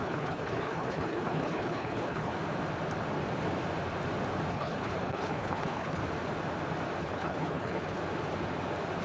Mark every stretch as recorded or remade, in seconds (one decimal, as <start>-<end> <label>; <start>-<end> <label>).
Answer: 0.0-2.3 remade; 2.3-4.5 recorded; 4.5-6.0 remade; 6.0-7.0 recorded; 7.0-8.0 remade; 8.0-9.0 recorded